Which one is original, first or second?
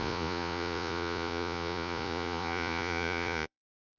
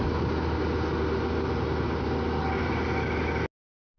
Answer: second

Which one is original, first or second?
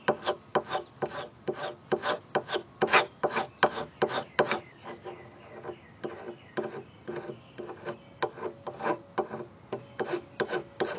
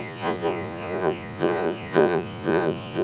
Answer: first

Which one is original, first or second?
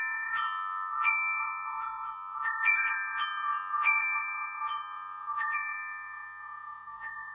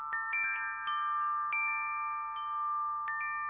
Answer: second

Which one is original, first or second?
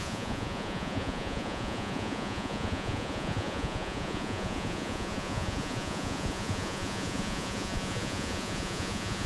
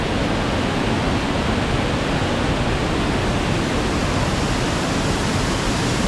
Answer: second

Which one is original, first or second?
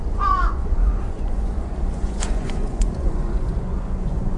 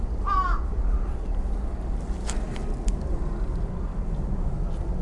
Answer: second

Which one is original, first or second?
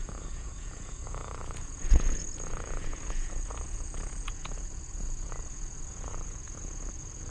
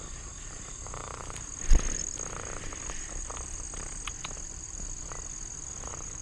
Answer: second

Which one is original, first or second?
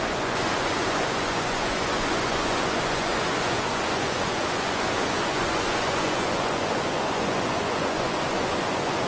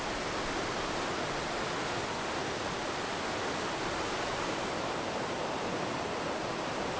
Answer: second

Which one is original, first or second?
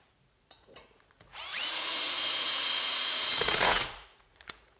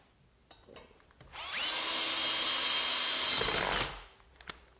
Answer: second